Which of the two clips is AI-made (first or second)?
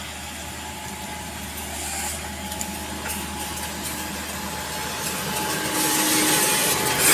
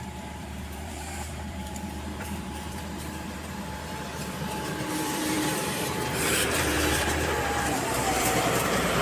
second